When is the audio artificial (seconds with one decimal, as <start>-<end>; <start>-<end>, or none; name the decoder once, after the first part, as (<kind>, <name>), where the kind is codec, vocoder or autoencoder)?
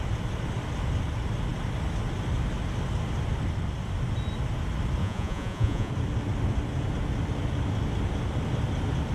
5.0-5.9 (vocoder, Vocos)